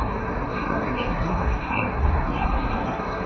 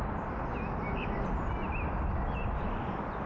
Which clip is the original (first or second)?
second